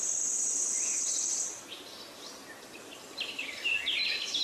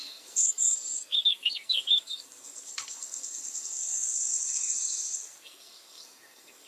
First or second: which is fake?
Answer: second